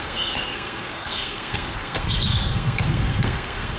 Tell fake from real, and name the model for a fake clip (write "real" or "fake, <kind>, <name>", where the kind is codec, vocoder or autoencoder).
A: fake, codec, SNAC